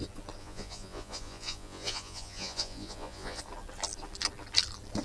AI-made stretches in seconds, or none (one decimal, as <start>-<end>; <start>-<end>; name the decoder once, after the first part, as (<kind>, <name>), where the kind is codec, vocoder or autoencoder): 0.4-3.4 (vocoder, Vocos)